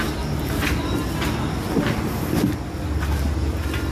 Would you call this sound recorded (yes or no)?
yes